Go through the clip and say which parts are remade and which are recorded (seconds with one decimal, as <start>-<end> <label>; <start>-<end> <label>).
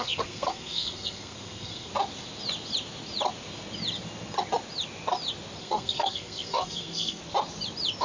0.0-1.9 remade; 1.9-5.6 recorded; 5.6-7.2 remade; 7.2-8.0 recorded